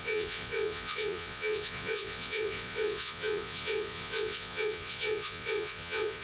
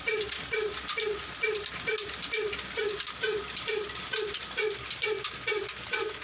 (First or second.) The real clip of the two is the second